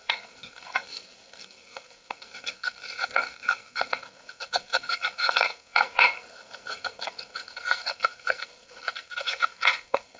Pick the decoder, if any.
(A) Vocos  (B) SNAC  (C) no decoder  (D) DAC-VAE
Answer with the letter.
B